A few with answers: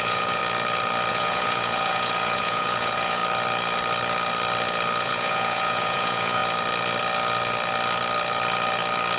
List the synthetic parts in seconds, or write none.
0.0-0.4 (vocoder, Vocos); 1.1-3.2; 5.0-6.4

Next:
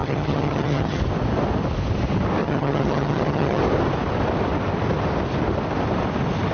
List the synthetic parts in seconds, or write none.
0.0-1.0 (vocoder, HiFi-GAN); 2.4-3.6